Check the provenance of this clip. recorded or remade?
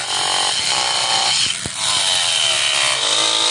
recorded